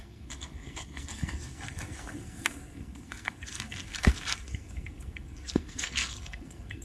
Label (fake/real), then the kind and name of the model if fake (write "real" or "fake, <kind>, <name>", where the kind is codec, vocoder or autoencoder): fake, codec, SNAC